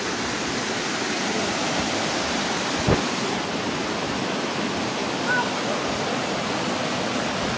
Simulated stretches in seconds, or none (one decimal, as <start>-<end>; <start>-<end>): none